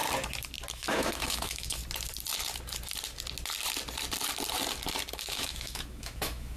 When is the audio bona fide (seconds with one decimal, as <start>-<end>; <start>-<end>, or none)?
0.0-0.7; 1.8-5.1